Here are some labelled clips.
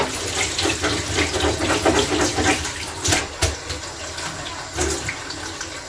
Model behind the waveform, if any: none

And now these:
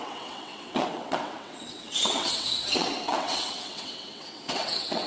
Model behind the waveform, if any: vocoder, WaveNeXt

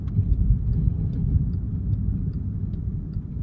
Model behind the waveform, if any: none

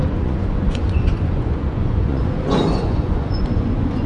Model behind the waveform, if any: vocoder, Vocos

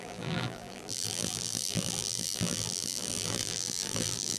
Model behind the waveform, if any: vocoder, BigVGAN v2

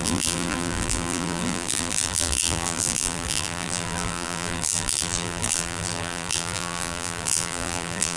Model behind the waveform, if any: vocoder, BigVGAN v2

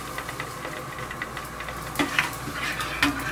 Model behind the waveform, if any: none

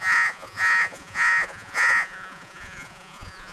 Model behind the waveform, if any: vocoder, Vocos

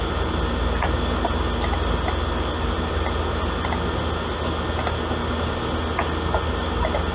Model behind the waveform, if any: none